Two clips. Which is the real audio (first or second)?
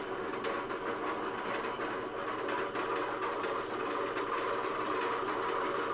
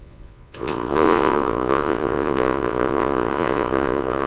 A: first